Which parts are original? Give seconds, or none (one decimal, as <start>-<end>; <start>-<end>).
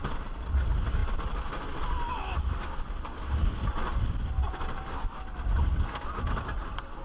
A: 0.0-7.0